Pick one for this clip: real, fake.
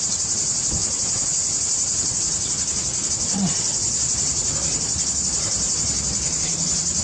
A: fake